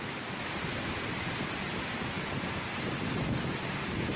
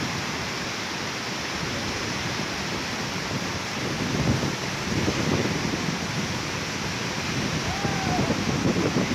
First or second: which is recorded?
second